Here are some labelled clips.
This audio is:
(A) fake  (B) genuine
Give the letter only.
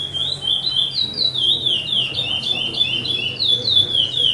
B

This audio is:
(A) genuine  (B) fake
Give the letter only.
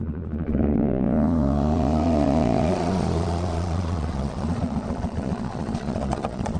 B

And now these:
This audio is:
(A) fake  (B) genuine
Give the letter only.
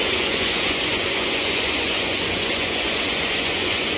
A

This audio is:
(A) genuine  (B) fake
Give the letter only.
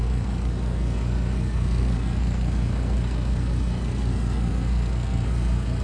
B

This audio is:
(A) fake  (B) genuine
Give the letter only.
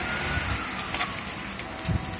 B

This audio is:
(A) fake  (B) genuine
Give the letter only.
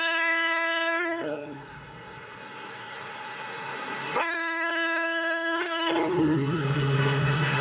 A